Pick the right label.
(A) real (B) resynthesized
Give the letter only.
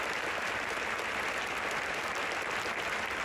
A